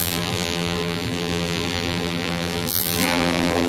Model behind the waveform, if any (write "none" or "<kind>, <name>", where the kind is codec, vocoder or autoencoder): vocoder, BigVGAN v2